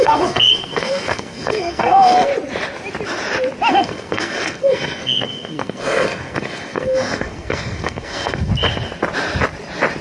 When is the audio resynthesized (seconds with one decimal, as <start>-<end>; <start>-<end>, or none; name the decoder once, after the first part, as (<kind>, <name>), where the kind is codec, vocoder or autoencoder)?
0.0-2.3 (codec, SNAC); 3.7-8.5